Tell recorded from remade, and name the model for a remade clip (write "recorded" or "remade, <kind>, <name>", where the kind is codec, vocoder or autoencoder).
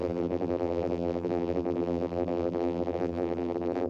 remade, vocoder, BigVGAN v2